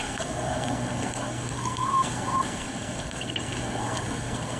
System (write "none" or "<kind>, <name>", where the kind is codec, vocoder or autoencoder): codec, SNAC